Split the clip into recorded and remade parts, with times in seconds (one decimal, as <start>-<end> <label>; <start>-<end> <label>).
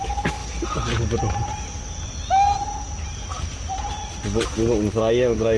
0.0-5.6 recorded